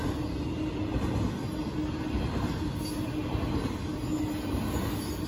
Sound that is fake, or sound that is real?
real